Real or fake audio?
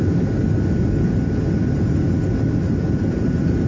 real